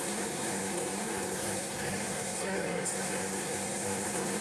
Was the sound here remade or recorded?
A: remade